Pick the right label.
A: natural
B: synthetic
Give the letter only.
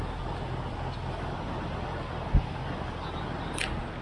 A